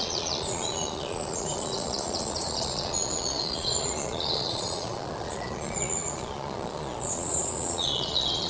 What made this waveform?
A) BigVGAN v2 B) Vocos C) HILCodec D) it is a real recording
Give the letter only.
B